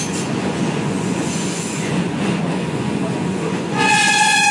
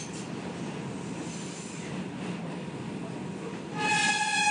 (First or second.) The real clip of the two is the second